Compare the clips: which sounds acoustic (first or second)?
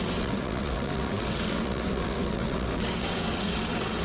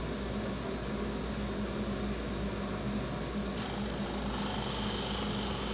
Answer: second